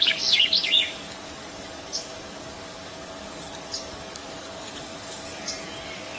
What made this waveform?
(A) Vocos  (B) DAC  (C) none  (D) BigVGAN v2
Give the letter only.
B